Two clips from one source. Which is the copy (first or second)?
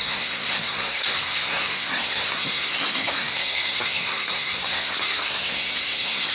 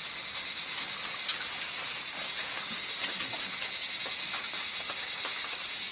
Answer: first